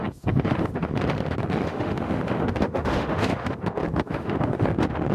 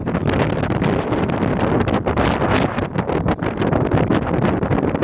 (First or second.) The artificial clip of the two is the first